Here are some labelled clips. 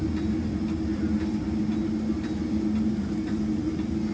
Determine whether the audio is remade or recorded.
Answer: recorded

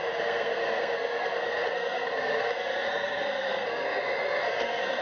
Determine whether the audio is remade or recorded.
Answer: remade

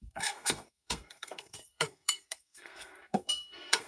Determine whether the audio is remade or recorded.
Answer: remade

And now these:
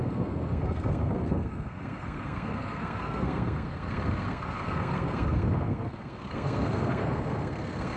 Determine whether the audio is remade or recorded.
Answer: remade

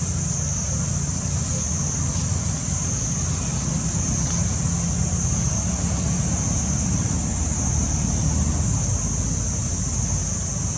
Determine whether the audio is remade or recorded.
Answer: recorded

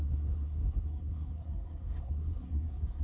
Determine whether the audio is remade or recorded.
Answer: remade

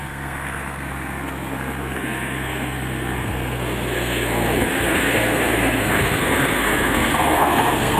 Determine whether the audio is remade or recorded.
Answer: remade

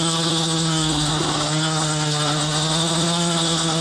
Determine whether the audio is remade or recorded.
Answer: remade